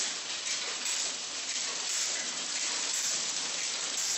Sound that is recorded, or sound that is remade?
remade